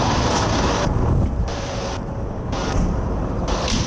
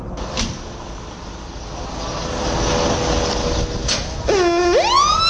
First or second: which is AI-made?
first